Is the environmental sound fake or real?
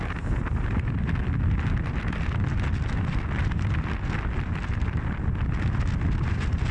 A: real